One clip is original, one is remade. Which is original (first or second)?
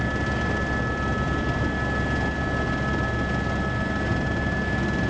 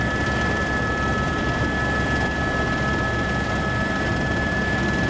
first